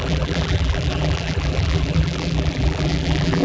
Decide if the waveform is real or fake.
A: fake